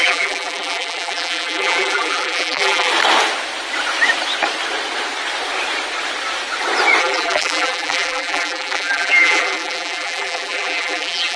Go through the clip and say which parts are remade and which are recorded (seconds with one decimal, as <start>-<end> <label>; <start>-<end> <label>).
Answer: 0.0-2.9 remade; 2.9-7.0 recorded; 7.0-11.4 remade